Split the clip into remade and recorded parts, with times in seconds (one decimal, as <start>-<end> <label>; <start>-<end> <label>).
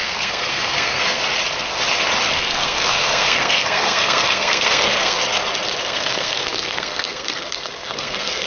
0.0-1.2 remade; 1.2-2.3 recorded; 2.3-5.2 remade; 5.2-5.8 recorded; 5.8-8.5 remade